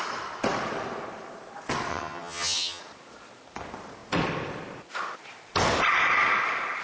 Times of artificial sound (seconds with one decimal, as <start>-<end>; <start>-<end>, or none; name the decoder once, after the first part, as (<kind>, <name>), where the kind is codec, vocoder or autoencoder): 1.9-2.8 (vocoder, HiFi-GAN)